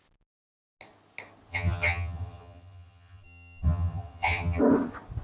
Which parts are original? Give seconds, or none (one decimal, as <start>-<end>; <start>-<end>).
0.0-1.5; 4.6-5.2